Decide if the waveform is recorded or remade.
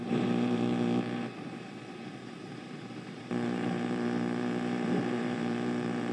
remade